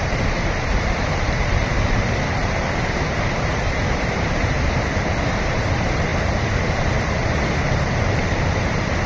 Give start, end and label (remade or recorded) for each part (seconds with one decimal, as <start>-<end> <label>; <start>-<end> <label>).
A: 0.0-9.1 remade